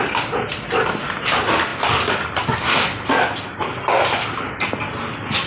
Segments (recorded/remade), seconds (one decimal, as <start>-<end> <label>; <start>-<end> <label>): 0.0-5.5 recorded